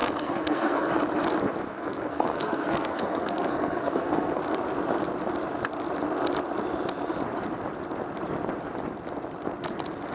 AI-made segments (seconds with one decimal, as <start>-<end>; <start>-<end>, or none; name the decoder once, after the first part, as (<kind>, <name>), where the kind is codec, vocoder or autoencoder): 0.0-0.9 (codec, SNAC); 1.7-4.4